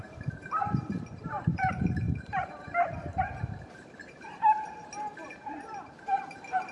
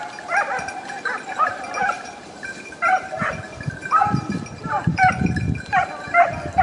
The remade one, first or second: first